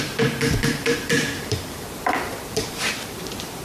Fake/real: fake